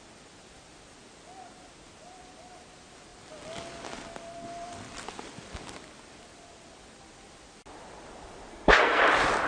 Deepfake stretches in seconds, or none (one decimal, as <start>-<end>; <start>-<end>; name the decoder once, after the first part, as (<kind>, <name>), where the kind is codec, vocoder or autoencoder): 8.5-9.0 (codec, SNAC)